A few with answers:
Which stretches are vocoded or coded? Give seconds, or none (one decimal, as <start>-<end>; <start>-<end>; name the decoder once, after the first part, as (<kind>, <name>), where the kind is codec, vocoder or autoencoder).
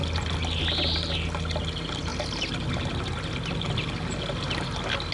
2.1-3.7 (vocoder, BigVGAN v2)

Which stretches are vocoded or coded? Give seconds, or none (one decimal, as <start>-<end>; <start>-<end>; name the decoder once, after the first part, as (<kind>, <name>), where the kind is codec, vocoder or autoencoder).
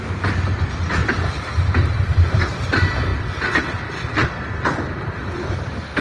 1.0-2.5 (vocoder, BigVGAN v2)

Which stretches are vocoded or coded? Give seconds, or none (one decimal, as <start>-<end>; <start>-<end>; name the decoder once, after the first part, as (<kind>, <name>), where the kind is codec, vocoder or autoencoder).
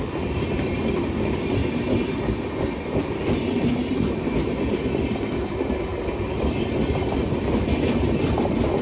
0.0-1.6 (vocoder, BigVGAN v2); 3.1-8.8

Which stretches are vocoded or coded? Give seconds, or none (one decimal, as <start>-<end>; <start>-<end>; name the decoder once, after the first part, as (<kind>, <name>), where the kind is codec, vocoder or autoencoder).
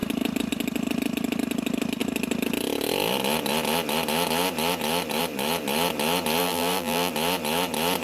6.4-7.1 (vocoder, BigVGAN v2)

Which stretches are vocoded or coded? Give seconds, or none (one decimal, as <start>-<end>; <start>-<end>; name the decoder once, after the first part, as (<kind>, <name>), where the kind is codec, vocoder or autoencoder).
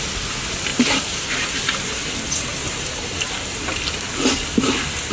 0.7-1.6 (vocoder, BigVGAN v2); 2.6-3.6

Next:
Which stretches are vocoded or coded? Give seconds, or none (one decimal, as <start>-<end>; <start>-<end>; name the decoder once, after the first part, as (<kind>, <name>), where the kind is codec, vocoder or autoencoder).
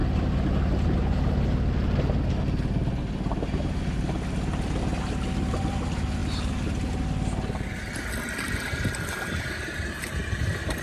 none